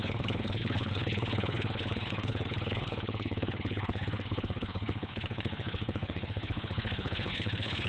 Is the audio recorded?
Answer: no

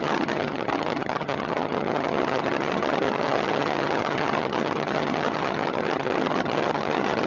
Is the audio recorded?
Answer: no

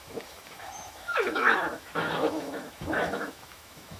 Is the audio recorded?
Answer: no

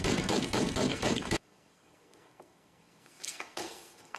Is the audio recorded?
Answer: no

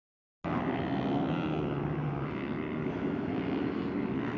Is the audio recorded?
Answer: yes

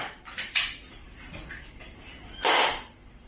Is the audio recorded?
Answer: no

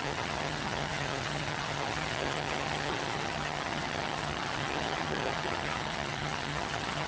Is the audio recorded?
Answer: no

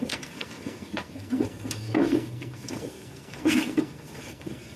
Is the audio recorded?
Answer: no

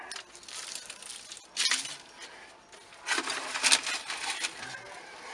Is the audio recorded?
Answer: yes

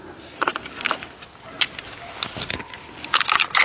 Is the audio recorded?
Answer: yes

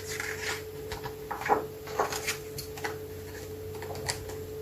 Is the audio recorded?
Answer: yes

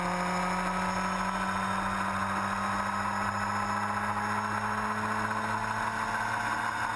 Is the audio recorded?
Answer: yes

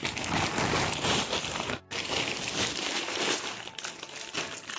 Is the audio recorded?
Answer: yes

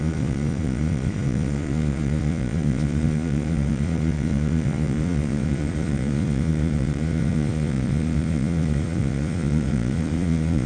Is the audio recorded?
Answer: no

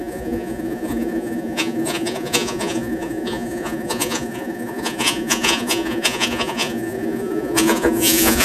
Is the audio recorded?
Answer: no